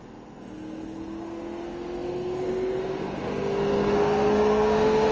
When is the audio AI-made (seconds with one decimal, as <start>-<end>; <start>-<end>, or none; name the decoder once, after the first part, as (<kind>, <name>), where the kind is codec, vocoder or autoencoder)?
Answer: 0.0-5.1 (codec, SNAC)